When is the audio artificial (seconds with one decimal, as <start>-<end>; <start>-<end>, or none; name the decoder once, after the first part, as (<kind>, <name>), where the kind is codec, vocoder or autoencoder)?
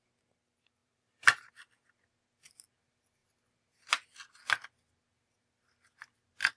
0.8-1.5 (vocoder, BigVGAN v2)